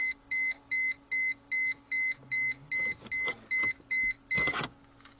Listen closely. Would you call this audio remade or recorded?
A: recorded